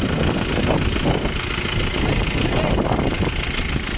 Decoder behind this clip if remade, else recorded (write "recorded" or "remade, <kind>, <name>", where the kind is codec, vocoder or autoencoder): recorded